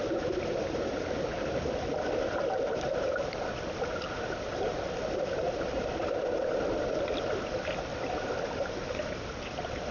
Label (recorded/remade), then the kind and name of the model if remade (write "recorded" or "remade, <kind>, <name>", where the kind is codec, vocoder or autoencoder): recorded